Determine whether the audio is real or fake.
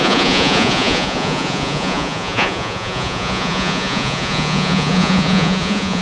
fake